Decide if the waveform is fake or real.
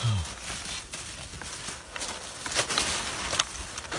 real